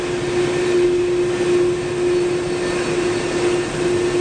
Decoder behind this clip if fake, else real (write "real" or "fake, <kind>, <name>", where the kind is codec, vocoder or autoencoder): real